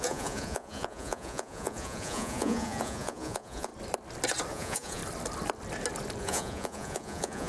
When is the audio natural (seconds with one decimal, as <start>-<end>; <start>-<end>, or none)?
3.7-4.5; 5.0-6.2

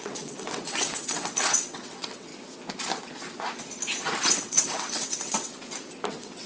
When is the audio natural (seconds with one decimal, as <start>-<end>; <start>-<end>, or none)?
2.3-4.3; 5.5-6.1

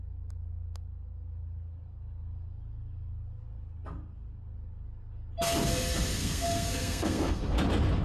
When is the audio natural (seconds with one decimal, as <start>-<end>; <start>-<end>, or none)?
0.0-6.2; 7.4-8.0